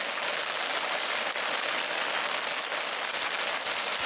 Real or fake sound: real